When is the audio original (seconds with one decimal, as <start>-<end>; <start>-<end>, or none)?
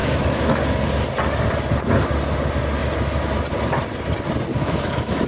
0.6-4.5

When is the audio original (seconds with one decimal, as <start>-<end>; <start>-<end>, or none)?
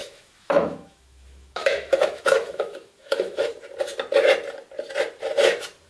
3.5-5.9